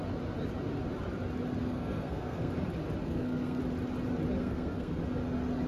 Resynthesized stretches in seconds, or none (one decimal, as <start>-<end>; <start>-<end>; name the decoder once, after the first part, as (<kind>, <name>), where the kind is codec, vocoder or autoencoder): 1.6-2.5 (codec, SNAC); 3.0-3.6; 4.4-5.0